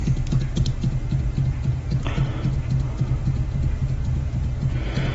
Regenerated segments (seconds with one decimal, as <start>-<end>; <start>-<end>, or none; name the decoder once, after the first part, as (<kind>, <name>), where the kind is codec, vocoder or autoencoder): none